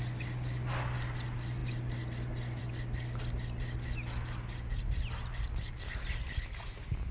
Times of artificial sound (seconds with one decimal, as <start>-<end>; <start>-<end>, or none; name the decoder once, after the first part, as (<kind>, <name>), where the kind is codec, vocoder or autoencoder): none